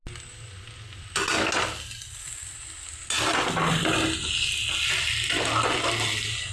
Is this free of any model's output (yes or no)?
yes